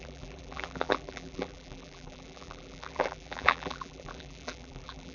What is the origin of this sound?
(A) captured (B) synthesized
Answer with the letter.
B